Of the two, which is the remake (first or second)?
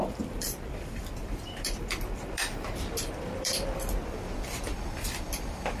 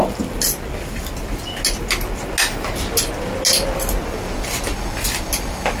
first